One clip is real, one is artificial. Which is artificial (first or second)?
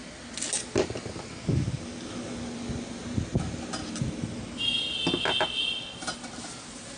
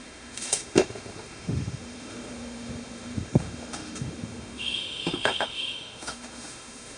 second